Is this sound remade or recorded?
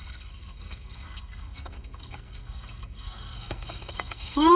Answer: remade